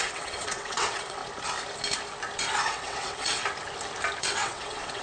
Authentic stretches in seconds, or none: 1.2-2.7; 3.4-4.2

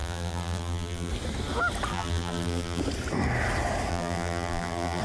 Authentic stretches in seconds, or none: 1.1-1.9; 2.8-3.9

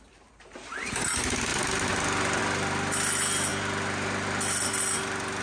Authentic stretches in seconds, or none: 0.0-5.4

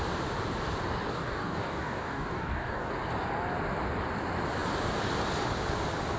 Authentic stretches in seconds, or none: 0.0-1.1; 2.9-6.2

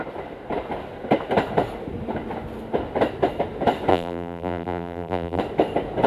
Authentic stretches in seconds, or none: 0.0-3.9; 5.4-6.1

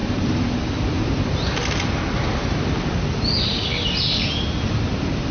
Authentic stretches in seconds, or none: 0.0-5.3